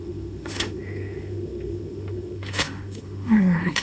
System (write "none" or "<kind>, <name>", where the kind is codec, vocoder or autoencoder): autoencoder, DAC-VAE